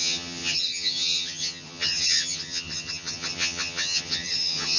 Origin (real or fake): fake